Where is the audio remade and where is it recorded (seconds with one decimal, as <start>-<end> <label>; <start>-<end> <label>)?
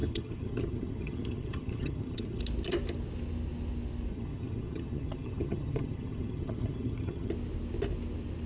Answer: 0.0-2.4 remade; 2.4-4.1 recorded; 4.1-7.3 remade; 7.3-8.5 recorded